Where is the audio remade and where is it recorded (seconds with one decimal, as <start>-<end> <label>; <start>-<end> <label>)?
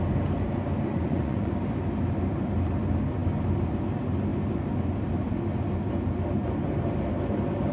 0.0-0.9 recorded; 0.9-1.5 remade; 1.5-7.7 recorded